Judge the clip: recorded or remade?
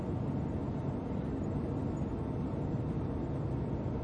recorded